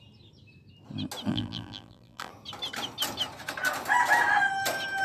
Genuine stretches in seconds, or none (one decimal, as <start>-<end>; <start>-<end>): 0.0-1.3; 2.3-5.0